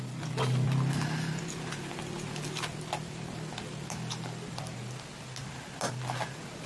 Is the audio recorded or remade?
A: recorded